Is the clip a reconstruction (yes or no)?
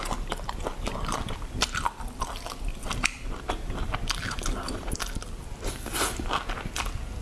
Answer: no